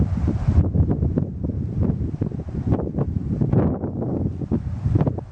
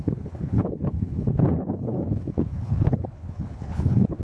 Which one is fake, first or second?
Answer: second